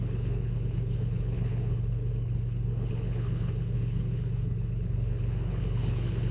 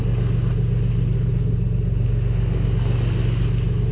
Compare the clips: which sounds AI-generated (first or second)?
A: first